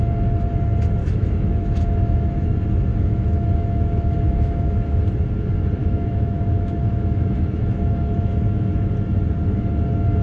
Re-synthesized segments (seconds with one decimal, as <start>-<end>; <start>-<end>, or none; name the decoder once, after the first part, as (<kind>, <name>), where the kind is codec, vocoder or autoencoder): 1.0-2.5 (autoencoder, DAC-VAE); 2.9-5.0; 5.8-8.9